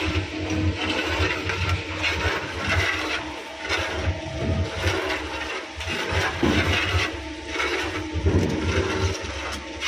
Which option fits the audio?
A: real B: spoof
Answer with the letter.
A